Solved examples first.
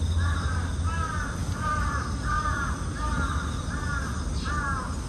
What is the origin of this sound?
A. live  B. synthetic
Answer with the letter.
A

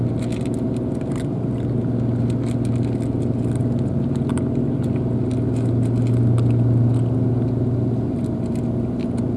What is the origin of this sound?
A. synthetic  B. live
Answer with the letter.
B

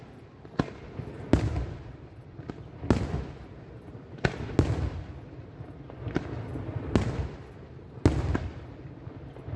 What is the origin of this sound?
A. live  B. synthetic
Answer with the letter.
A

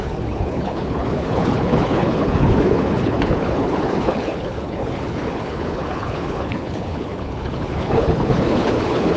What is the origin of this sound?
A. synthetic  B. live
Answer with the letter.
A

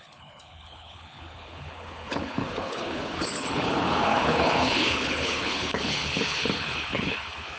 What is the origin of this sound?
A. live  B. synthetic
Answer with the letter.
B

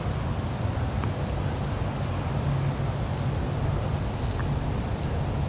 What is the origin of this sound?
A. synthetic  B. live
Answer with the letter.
B